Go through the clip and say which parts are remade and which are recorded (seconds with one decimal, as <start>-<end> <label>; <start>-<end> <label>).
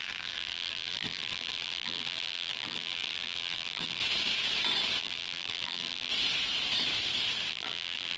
0.0-4.0 remade; 4.0-5.0 recorded; 5.0-6.1 remade; 6.1-7.5 recorded; 7.5-8.2 remade